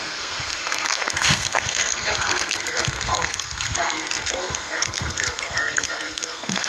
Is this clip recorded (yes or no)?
no